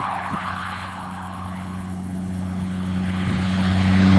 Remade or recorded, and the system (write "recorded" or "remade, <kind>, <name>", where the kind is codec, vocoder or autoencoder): remade, codec, HILCodec